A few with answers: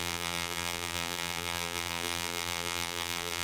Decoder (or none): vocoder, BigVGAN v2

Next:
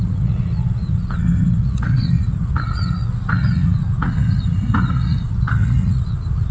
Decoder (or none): vocoder, Vocos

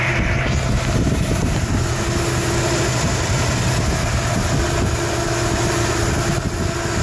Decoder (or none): none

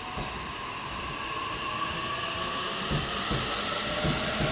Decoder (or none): none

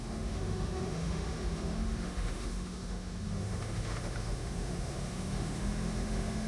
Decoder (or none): autoencoder, DAC-VAE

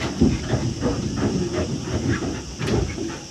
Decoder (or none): none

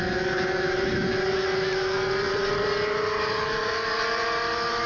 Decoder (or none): vocoder, BigVGAN v2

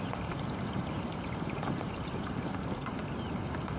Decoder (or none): vocoder, BigVGAN v2